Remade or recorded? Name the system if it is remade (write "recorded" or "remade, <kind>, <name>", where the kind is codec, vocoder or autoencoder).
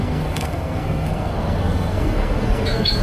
remade, codec, SNAC